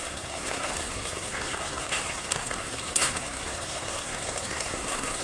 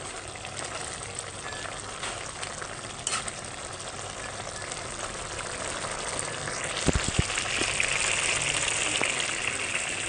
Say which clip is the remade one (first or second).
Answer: first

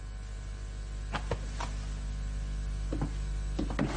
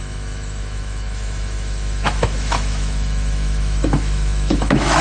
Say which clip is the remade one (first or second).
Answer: second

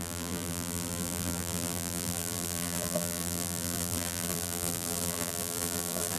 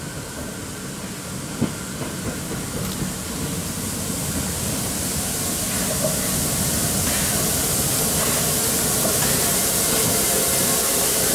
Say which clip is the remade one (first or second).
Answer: first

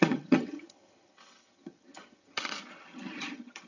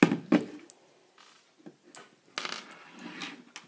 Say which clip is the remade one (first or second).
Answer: first